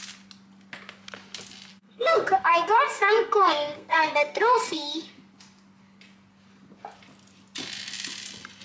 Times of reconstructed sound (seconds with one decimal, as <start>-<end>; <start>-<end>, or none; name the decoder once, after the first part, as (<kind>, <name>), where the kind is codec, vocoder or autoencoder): 1.7-5.1 (codec, SNAC)